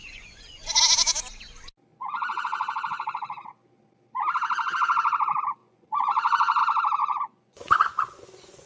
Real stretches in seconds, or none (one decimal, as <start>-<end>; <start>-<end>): 0.8-1.9; 3.5-5.6; 6.6-7.0